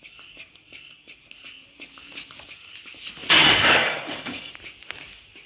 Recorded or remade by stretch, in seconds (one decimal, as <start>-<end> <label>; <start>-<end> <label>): 0.0-3.4 recorded; 3.4-4.5 remade; 4.5-5.5 recorded